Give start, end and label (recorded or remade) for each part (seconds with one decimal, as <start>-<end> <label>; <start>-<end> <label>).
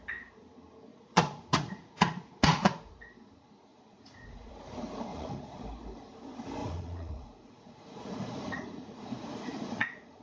0.0-0.9 recorded; 0.9-2.9 remade; 2.9-3.7 recorded; 3.7-4.5 remade; 4.5-5.1 recorded; 5.1-5.6 remade; 5.6-6.6 recorded; 6.6-10.2 remade